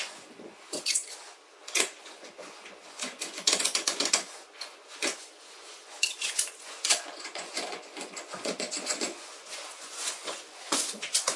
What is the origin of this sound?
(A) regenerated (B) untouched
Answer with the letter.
A